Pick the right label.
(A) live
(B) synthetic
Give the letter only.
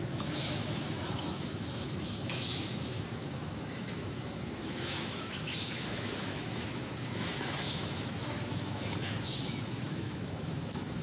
B